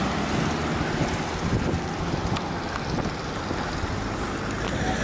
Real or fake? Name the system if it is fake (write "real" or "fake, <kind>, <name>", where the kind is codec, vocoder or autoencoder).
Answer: real